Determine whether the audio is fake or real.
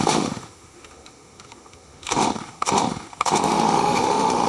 fake